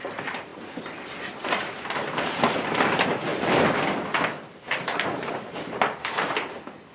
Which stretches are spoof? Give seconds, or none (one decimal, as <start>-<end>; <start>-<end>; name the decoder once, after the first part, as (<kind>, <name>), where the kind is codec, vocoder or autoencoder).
none